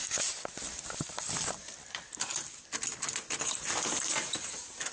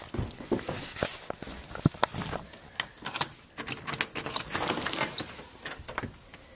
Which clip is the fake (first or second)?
first